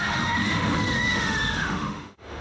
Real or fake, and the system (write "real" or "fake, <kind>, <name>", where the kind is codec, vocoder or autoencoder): fake, autoencoder, DAC-VAE